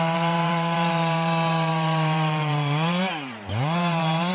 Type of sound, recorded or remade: remade